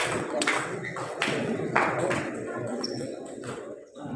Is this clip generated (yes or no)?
yes